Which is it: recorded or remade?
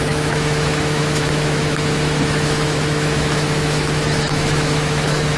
remade